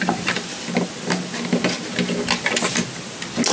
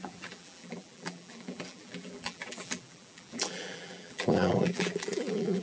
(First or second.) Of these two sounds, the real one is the first